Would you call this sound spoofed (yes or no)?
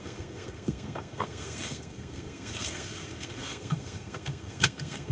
yes